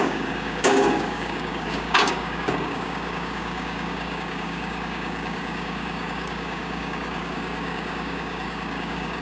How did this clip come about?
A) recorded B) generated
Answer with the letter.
B